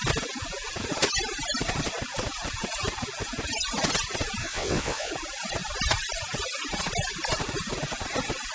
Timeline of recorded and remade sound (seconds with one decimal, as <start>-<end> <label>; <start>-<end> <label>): 0.0-4.4 recorded; 4.4-5.1 remade; 5.1-8.5 recorded

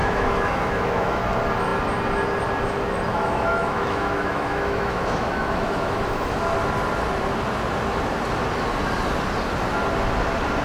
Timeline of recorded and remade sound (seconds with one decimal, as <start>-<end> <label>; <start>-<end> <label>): 0.0-1.2 remade; 1.2-3.1 recorded; 3.1-6.4 remade; 6.4-10.6 recorded

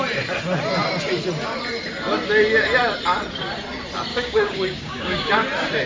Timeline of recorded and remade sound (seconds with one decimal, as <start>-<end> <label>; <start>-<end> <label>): 0.0-4.1 recorded; 4.1-5.3 remade; 5.3-5.9 recorded

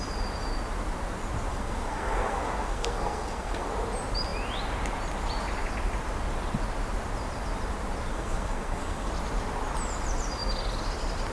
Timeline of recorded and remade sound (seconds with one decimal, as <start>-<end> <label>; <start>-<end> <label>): 0.0-1.5 recorded; 1.5-3.7 remade; 3.7-8.1 recorded; 8.1-9.1 remade; 9.1-11.3 recorded

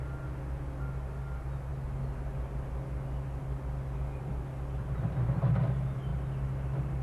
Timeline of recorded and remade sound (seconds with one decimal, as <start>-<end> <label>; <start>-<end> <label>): 0.0-7.0 recorded

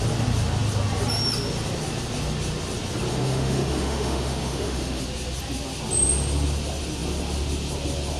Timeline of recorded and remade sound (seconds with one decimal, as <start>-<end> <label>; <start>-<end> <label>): 0.0-3.1 recorded; 3.1-5.0 remade; 5.0-8.2 recorded

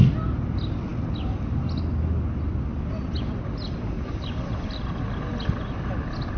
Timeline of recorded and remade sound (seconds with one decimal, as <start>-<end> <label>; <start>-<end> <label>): 0.0-6.4 recorded

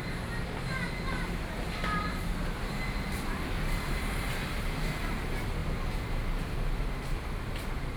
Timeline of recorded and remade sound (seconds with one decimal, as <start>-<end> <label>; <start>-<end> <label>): 0.0-8.0 recorded